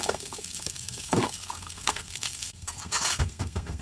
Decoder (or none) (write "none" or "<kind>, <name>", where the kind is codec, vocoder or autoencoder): codec, SNAC